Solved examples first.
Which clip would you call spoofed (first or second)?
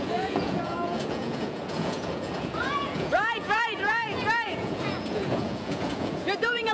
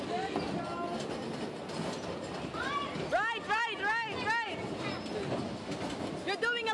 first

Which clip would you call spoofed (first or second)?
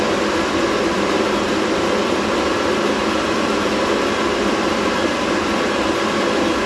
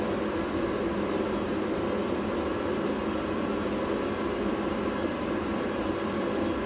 first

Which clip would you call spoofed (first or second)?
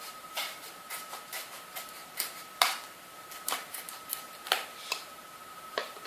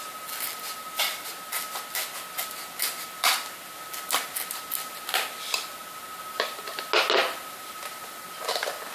first